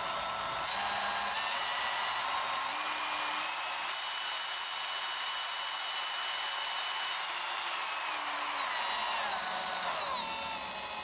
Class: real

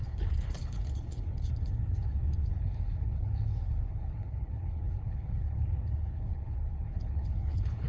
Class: fake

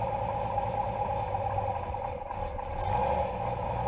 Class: real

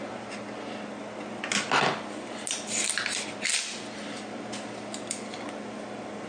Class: real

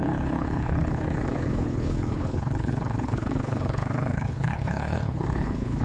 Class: fake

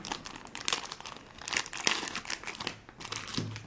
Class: real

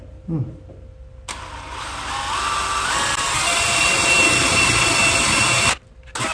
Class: real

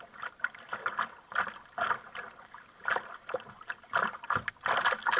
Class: real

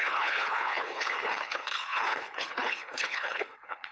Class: fake